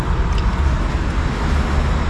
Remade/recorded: recorded